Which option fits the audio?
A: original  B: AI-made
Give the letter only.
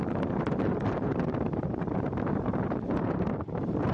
B